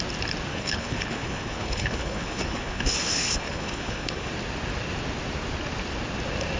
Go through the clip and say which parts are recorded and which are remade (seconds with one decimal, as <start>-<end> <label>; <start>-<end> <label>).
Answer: 0.0-0.5 recorded; 0.5-4.3 remade; 4.3-6.6 recorded